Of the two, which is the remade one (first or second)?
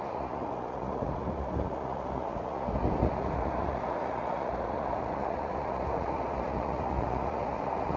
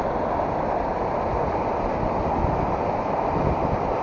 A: first